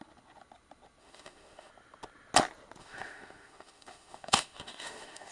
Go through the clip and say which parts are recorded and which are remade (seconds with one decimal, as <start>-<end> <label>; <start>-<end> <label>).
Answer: 0.0-1.0 recorded; 1.0-1.7 remade; 1.7-2.8 recorded; 2.8-5.3 remade